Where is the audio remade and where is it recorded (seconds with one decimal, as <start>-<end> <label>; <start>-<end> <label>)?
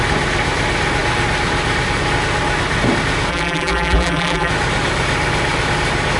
0.0-3.3 recorded; 3.3-4.5 remade; 4.5-6.2 recorded